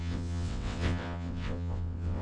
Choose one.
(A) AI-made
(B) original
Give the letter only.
A